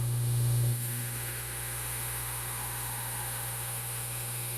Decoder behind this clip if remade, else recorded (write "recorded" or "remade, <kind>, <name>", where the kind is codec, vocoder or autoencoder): remade, autoencoder, DAC-VAE